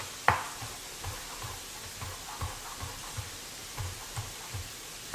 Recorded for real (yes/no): yes